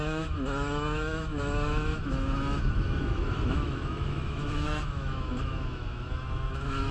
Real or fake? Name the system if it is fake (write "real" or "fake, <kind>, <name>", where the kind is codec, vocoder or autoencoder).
fake, autoencoder, DAC-VAE